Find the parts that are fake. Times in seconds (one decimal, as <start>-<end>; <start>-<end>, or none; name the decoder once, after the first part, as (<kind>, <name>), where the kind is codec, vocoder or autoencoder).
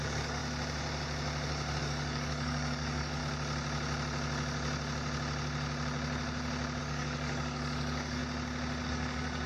0.0-0.4 (codec, DAC); 1.8-3.2; 6.8-8.2; 8.8-9.5